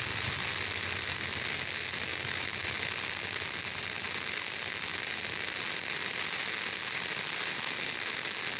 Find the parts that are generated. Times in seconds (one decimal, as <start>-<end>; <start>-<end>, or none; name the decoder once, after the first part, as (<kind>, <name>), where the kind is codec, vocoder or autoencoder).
none